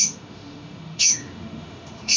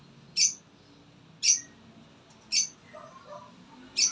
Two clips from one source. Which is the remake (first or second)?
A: first